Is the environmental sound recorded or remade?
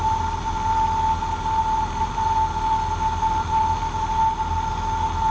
recorded